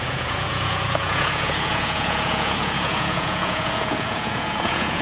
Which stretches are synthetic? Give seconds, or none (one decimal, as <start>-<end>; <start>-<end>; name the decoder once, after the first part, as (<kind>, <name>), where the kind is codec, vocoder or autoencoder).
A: 0.0-5.0 (vocoder, Vocos)